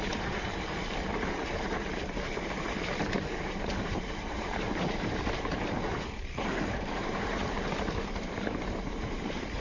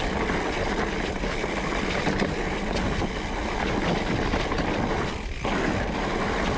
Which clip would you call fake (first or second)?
first